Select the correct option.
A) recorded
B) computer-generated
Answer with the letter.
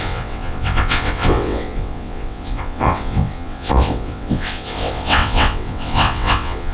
B